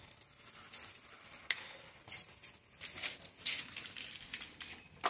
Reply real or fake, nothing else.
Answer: real